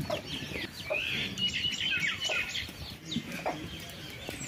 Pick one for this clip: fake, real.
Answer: fake